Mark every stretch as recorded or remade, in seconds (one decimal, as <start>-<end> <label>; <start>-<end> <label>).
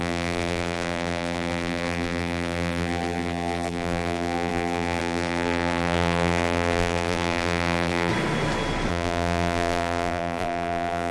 0.0-8.1 remade; 8.1-8.9 recorded; 8.9-11.1 remade